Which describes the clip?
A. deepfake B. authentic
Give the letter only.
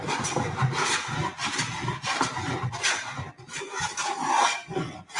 B